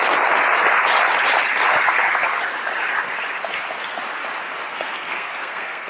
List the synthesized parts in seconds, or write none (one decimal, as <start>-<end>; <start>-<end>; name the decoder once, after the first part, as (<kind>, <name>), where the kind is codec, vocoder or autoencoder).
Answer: 4.7-5.9 (codec, SNAC)